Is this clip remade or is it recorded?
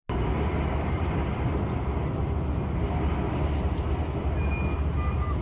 recorded